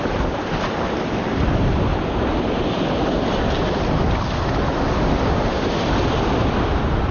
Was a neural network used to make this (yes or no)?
no